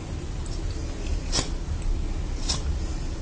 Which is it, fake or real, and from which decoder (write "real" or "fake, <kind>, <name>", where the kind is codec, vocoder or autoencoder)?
real